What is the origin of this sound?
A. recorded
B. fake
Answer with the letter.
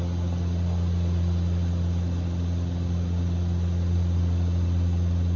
A